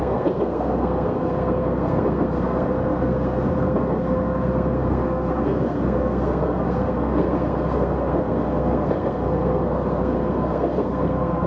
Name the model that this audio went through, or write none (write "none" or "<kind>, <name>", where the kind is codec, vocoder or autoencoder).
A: codec, SNAC